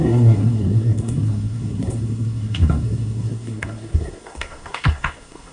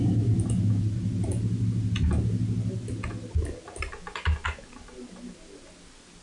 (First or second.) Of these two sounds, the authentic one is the second